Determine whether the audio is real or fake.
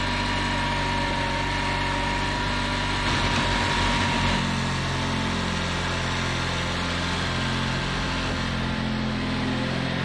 real